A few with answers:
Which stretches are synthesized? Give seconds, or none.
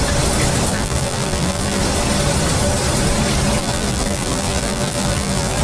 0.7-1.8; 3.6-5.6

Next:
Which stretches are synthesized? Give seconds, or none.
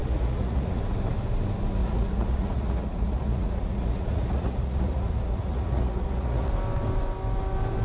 0.0-0.8; 1.8-6.5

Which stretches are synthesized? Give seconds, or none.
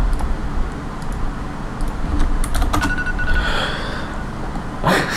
none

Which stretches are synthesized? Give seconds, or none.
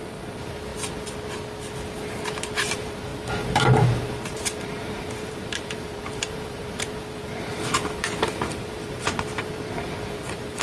0.0-0.7; 2.4-10.6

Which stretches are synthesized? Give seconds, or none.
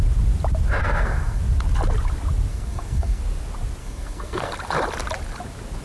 0.8-1.4; 2.5-3.2; 3.8-4.5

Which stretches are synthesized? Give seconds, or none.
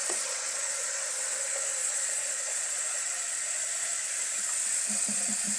0.0-1.1; 1.8-2.8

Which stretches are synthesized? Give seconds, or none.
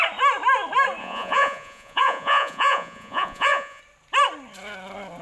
1.0-3.8